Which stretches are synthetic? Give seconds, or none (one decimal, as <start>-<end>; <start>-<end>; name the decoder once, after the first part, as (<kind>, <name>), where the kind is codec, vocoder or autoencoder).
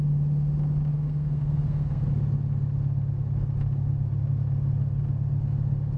0.9-2.1 (codec, SNAC)